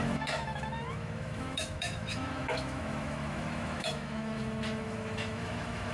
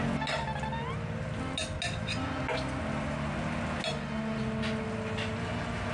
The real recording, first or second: second